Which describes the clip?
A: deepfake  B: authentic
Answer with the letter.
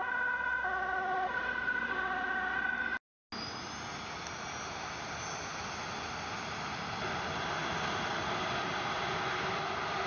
B